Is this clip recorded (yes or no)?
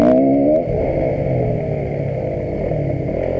yes